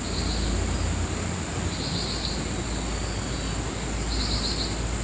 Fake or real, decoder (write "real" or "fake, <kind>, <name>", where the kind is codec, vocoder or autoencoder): real